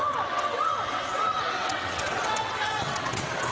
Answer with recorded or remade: remade